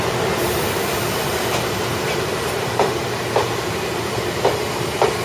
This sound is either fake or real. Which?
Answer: fake